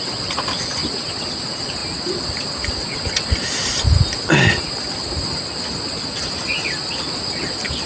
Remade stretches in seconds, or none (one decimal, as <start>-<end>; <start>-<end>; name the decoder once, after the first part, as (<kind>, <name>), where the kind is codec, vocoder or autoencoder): none